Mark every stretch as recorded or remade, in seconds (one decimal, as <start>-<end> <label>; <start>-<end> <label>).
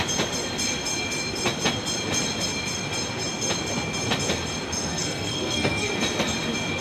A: 0.0-4.9 recorded; 4.9-5.9 remade; 5.9-6.8 recorded